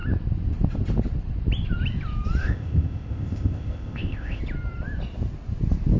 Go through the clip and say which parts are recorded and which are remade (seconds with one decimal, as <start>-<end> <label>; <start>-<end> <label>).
0.0-2.4 recorded; 2.4-4.4 remade; 4.4-6.0 recorded